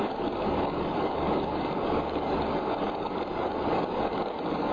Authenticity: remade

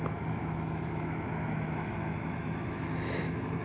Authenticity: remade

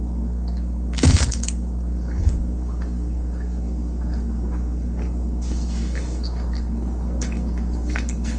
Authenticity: remade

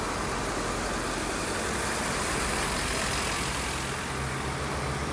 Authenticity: recorded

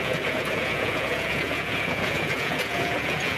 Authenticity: remade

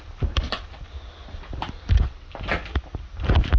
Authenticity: recorded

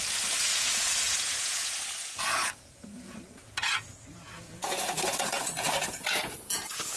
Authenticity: remade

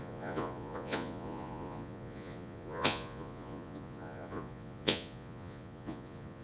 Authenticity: remade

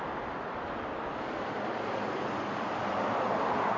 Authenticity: recorded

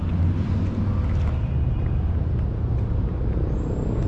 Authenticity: recorded